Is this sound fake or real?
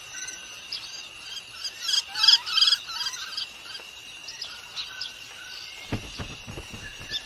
real